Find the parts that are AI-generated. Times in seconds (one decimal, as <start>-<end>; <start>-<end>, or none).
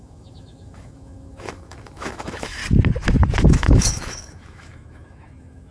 0.0-2.6; 3.5-5.7